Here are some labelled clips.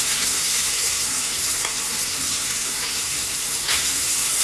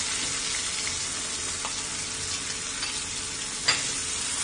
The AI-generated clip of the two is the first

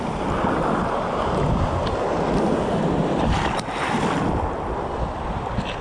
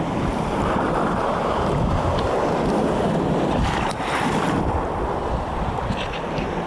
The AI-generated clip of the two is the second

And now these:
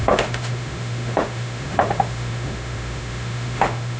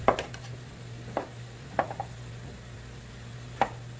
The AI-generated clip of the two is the first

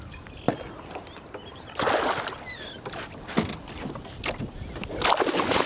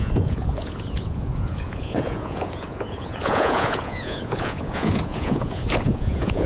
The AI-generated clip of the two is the second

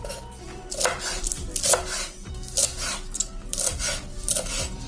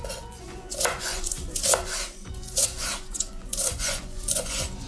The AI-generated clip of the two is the second